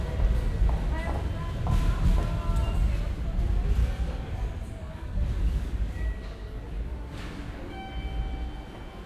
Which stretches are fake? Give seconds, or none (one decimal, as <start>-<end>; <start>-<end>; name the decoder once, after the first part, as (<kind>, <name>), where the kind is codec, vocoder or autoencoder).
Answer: 3.8-7.9 (codec, DAC)